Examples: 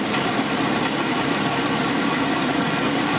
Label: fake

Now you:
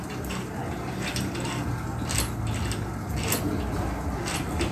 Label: real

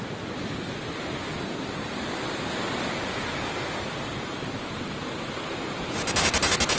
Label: real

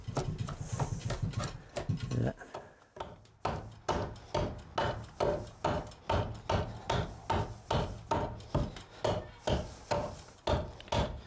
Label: real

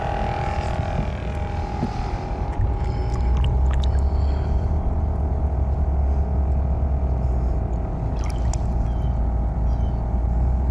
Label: real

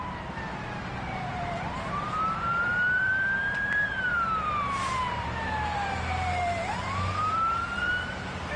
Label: fake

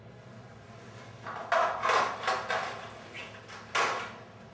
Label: real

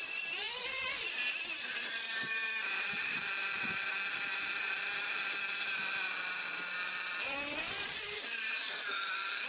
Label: fake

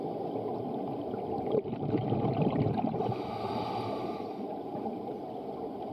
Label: real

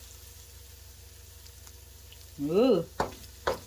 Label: real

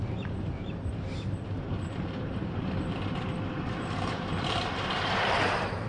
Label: fake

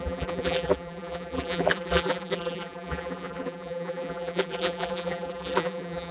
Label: fake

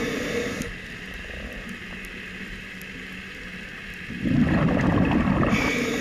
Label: real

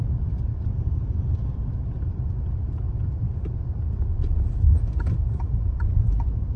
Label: fake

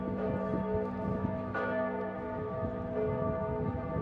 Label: real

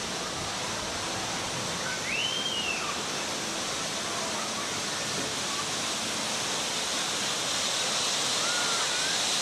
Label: real